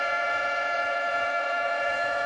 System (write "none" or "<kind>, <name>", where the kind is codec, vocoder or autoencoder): vocoder, Vocos